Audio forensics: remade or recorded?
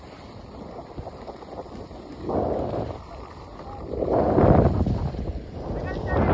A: recorded